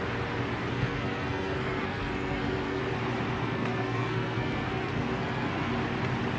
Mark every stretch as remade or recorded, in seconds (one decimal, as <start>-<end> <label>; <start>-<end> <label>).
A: 0.0-0.7 recorded; 0.7-2.8 remade; 2.8-3.4 recorded; 3.4-5.7 remade; 5.7-6.4 recorded